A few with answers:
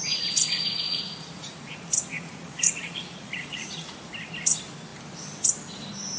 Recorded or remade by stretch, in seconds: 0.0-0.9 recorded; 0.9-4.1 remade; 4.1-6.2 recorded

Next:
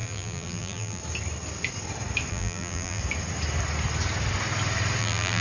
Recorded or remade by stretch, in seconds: 0.0-1.0 remade; 1.0-2.3 recorded; 2.3-3.0 remade; 3.0-5.0 recorded; 5.0-5.4 remade